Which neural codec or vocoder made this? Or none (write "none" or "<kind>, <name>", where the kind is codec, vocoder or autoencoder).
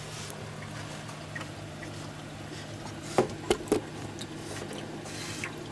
none